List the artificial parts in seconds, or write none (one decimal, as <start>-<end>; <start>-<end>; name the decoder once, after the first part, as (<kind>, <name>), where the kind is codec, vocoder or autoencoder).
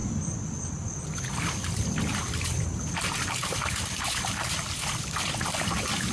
0.0-1.0 (vocoder, BigVGAN v2); 3.4-5.3